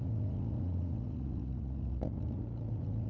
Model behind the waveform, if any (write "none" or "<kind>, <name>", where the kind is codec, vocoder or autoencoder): vocoder, Vocos